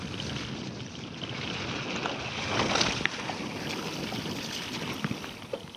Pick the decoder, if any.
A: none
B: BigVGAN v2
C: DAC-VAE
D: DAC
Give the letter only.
A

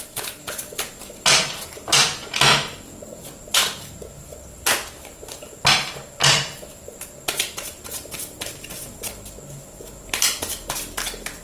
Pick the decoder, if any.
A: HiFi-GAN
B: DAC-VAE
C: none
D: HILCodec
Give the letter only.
C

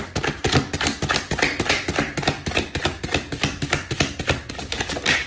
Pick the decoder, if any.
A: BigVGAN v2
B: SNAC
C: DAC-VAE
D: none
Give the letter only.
D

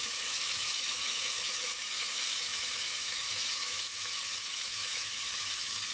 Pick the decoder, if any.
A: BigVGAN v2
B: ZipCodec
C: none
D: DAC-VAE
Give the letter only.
D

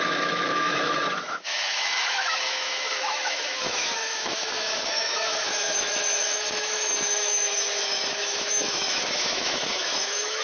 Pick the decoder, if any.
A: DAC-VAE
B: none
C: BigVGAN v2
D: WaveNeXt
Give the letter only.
A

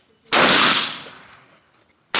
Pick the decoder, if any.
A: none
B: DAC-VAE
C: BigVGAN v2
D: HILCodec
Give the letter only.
A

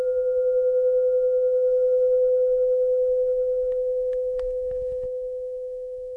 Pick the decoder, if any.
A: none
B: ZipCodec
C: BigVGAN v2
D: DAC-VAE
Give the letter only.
D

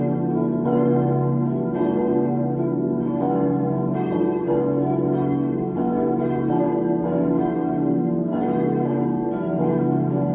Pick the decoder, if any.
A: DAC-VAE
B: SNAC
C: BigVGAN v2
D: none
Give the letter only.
A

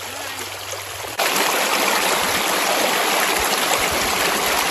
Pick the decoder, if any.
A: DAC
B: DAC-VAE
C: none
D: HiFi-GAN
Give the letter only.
C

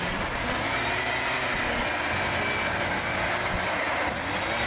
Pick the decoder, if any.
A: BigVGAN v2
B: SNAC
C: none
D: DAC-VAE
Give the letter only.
C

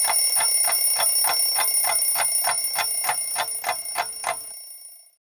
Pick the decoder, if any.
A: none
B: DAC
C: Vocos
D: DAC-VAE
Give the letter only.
A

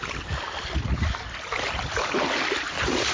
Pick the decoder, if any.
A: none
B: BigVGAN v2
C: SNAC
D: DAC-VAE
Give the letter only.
A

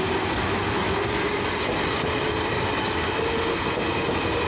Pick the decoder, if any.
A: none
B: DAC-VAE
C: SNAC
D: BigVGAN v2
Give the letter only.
A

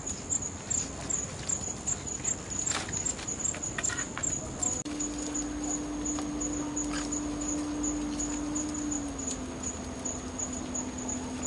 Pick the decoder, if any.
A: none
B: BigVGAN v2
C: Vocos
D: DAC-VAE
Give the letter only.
A